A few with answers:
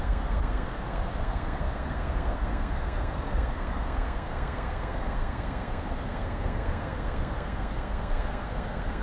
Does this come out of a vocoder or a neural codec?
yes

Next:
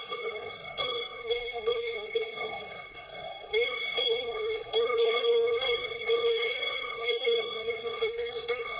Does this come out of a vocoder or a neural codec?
yes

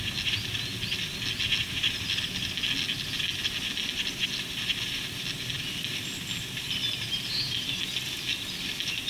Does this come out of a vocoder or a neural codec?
no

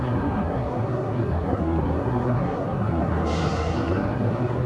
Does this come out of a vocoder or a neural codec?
yes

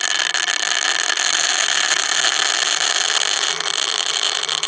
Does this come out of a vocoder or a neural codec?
no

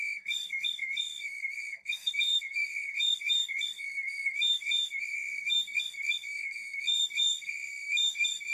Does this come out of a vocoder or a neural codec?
yes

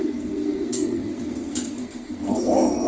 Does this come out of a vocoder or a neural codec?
yes